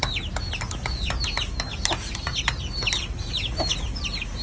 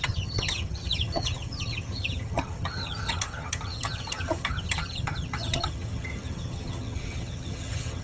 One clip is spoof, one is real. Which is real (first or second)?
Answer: first